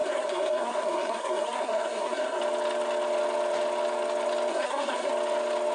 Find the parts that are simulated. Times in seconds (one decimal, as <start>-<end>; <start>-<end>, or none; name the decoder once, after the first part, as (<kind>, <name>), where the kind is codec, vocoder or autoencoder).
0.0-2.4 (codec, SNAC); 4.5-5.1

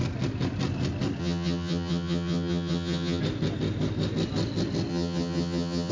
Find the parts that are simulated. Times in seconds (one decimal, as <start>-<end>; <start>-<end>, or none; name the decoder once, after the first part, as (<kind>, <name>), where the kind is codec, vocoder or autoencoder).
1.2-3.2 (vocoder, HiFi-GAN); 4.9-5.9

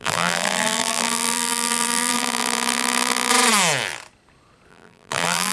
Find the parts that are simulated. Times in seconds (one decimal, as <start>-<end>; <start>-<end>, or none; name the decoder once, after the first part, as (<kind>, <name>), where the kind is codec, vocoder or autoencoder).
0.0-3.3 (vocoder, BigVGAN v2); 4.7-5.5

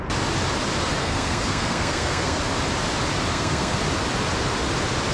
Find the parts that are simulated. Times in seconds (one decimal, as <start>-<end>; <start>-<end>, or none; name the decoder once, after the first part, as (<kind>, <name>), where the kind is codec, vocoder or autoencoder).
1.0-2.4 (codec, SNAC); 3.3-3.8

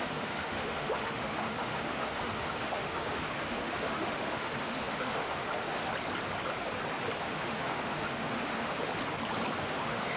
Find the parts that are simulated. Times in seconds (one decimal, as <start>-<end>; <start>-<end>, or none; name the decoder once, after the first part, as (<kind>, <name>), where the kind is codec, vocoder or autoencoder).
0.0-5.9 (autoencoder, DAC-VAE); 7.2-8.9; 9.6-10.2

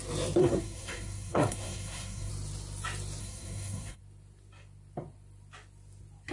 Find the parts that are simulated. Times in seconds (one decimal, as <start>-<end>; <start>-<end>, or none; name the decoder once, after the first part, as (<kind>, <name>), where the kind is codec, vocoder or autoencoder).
0.4-2.3 (codec, SNAC); 3.2-4.0